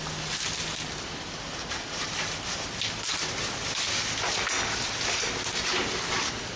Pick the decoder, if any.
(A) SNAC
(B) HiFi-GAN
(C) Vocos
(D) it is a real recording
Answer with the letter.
D